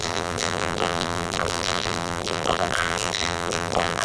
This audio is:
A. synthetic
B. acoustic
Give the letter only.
A